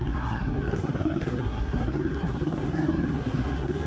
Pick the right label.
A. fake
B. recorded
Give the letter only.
A